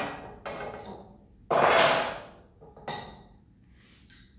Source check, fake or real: real